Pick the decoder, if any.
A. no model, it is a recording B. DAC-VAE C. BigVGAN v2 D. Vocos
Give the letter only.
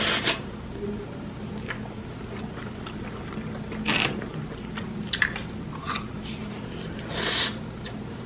A